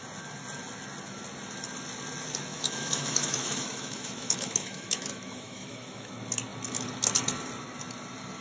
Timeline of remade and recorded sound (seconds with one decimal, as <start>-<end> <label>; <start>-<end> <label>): 0.0-2.5 recorded; 2.5-6.1 remade; 6.1-8.4 recorded